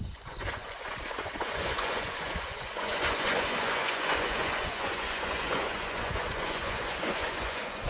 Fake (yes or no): yes